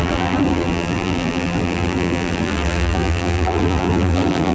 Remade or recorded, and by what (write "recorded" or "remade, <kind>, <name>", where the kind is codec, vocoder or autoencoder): remade, vocoder, BigVGAN v2